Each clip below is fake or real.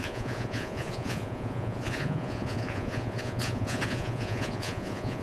fake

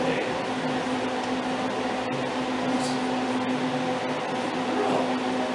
real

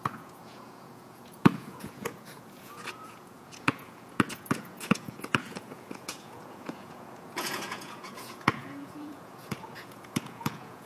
fake